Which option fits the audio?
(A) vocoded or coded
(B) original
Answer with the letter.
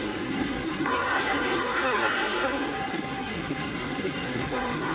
A